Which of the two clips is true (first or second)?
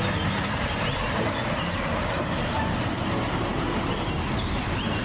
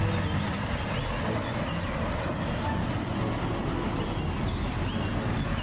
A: second